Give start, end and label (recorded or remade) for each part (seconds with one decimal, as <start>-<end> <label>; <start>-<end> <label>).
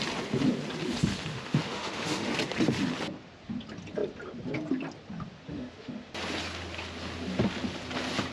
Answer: 0.0-1.3 recorded; 1.3-2.3 remade; 2.3-5.5 recorded; 5.5-6.1 remade; 6.1-8.3 recorded